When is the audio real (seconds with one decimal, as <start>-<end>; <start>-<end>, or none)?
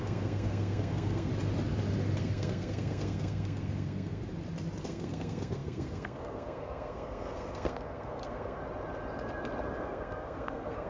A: 1.3-2.2; 4.2-4.8; 8.6-9.8